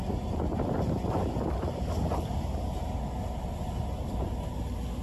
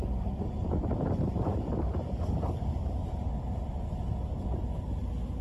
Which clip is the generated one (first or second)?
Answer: second